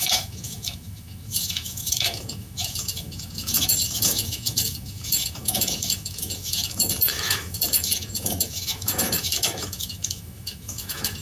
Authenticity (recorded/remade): remade